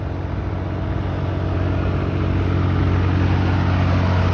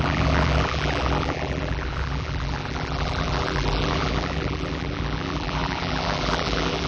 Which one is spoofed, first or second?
second